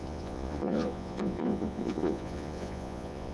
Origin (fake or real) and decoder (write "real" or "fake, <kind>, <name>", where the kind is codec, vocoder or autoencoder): fake, vocoder, Vocos